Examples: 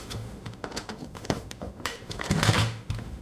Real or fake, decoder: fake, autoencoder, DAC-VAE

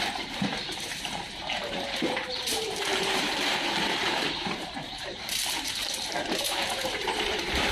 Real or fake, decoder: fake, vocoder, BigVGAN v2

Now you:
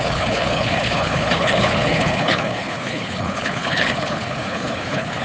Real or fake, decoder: fake, codec, HILCodec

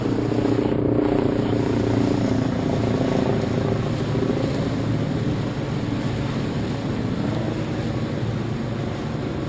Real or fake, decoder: real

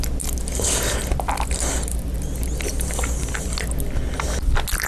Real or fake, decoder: real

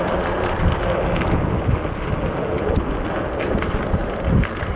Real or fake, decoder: real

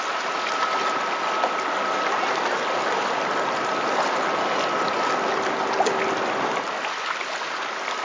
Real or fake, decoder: real